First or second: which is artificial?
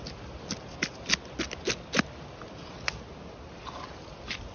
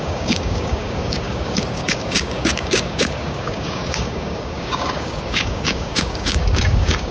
second